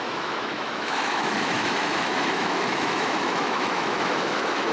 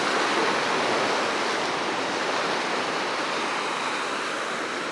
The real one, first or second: second